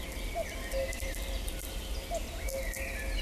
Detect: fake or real real